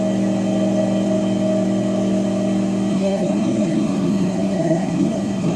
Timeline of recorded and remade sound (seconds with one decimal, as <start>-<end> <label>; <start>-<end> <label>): 0.0-2.9 recorded; 2.9-5.6 remade